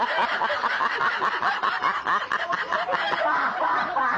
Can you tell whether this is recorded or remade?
recorded